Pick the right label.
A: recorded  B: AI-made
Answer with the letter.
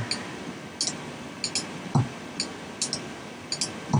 A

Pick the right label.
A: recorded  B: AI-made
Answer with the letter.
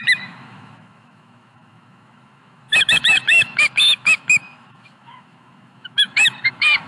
B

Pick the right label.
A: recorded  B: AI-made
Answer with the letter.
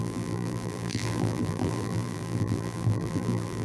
B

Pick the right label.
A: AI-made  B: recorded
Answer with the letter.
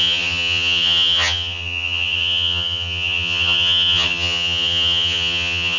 A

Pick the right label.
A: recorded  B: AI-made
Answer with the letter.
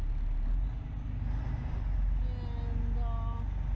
A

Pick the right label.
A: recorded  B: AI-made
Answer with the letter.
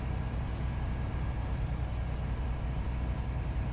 A